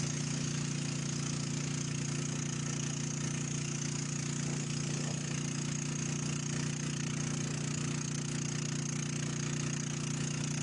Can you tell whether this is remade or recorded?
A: recorded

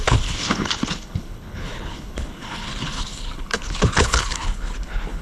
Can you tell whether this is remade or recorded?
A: remade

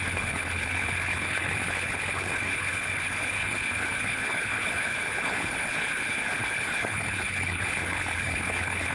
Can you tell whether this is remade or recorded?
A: remade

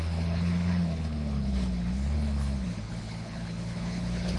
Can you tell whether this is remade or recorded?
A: remade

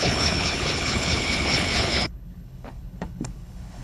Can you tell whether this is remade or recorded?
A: remade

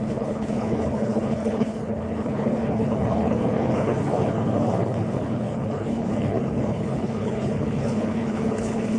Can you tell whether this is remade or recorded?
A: remade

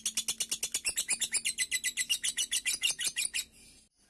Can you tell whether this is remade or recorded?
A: recorded